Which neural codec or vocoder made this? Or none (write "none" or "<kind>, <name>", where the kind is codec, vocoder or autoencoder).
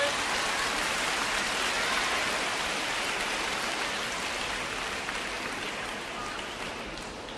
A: none